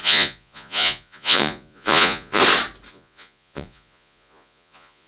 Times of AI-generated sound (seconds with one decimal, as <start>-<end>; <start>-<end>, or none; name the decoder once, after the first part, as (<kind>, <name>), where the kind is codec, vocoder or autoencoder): 0.0-2.4 (vocoder, Vocos); 2.9-5.1